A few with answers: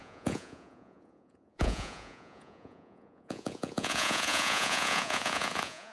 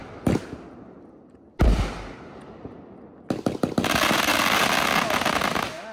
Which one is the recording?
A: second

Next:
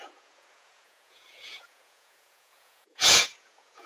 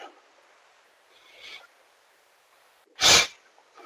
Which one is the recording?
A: second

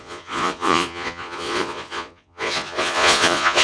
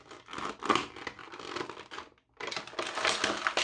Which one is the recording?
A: second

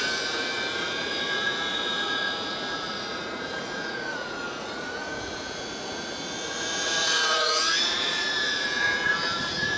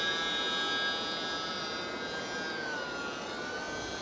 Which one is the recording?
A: second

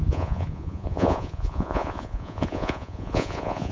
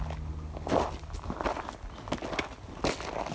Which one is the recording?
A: second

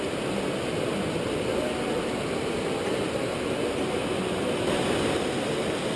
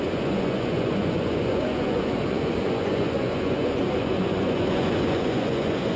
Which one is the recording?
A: first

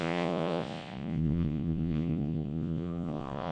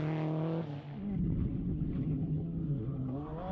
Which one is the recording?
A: second